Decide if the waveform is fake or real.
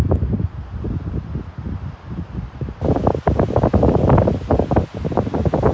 real